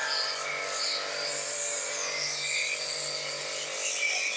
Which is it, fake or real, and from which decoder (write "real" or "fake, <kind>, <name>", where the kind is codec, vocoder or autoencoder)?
real